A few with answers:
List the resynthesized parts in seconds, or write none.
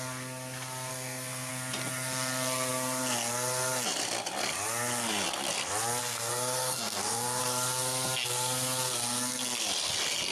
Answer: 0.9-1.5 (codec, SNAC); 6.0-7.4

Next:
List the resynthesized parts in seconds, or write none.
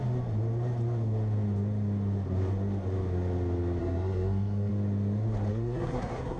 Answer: 3.8-4.7 (codec, SNAC); 5.5-6.4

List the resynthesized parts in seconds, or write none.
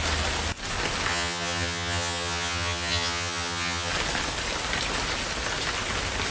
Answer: 1.1-3.9 (vocoder, HiFi-GAN)